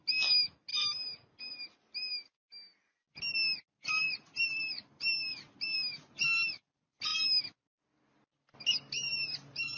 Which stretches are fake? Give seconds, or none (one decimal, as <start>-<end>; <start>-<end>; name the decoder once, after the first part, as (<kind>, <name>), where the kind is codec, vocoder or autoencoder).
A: none